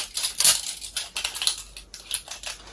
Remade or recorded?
recorded